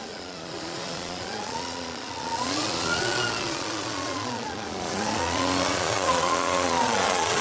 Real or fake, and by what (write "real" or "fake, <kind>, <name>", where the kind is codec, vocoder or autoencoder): fake, vocoder, Vocos